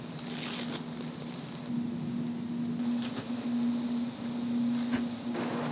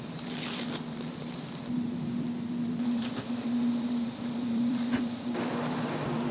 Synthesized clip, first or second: second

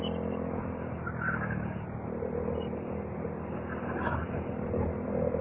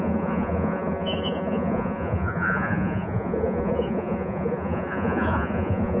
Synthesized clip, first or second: second